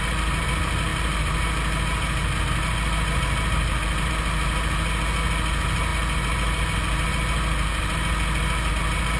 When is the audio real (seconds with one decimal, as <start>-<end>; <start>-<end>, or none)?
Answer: 0.0-9.2